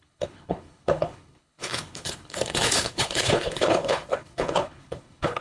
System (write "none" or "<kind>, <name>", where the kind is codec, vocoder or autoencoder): codec, HILCodec